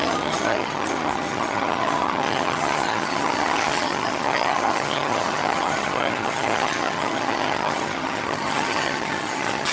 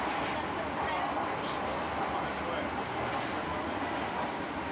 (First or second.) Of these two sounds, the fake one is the first